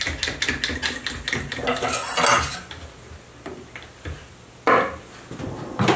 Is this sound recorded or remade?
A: recorded